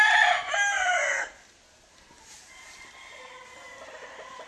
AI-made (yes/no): no